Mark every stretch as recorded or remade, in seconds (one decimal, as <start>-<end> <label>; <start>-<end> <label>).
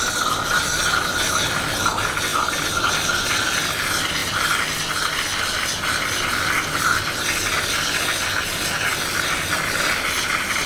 0.0-10.7 recorded